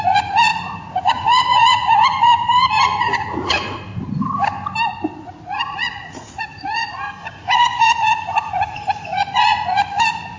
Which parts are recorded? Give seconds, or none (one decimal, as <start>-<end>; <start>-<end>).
3.9-5.2